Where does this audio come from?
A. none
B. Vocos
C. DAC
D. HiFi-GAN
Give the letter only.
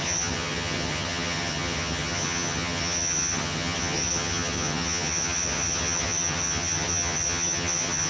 D